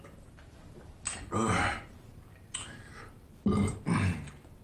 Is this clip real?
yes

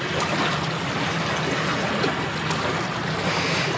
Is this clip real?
yes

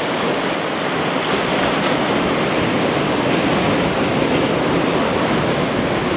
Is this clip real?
yes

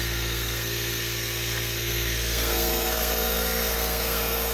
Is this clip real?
no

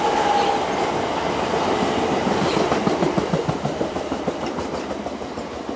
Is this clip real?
yes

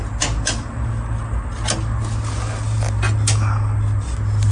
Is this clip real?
yes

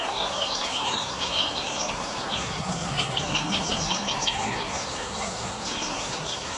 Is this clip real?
no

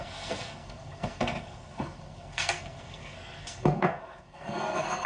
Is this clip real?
no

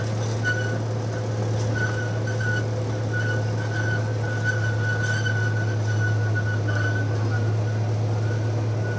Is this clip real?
yes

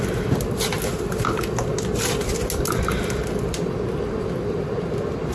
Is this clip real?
yes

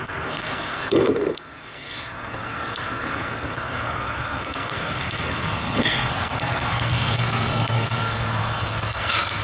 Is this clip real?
no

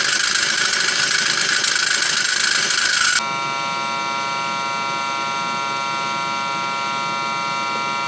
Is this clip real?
yes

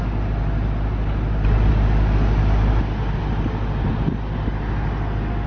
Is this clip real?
yes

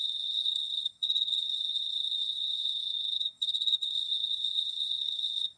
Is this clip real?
no